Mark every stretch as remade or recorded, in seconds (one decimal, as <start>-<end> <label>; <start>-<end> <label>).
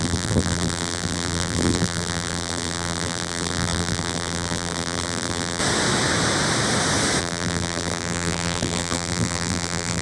0.0-5.6 remade; 5.6-7.2 recorded; 7.2-10.0 remade